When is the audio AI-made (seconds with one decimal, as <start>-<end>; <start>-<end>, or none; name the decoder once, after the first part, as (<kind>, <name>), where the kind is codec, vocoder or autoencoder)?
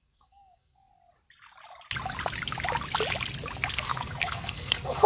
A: 0.0-0.9 (codec, SNAC); 3.7-5.1